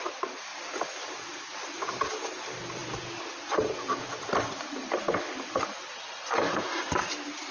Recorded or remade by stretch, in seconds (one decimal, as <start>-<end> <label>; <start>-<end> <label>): 0.0-2.8 recorded; 2.8-6.1 remade; 6.1-7.5 recorded